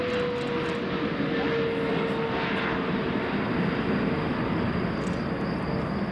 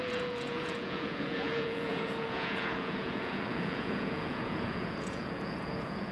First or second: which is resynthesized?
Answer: second